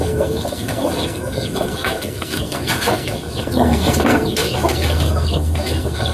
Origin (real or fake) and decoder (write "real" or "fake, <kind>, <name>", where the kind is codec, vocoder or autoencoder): fake, codec, SNAC